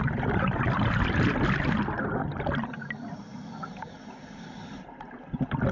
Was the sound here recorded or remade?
recorded